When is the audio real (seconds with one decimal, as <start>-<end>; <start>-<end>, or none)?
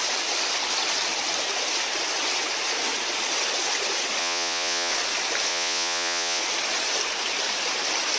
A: 0.0-4.2; 4.9-5.5; 6.4-8.2